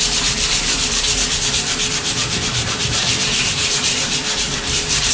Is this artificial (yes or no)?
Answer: yes